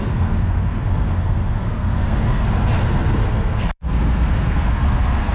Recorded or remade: remade